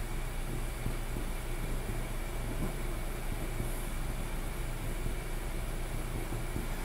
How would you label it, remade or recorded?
recorded